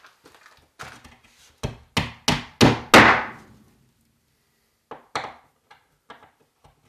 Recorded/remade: recorded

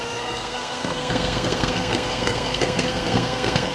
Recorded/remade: remade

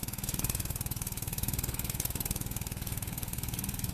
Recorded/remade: remade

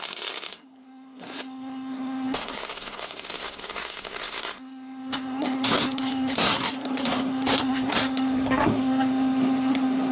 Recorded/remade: remade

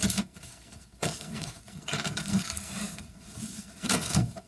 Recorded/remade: remade